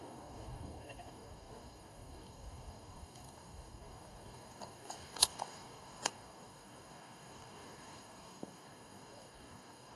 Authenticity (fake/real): fake